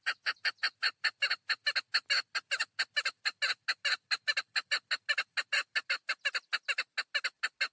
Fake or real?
real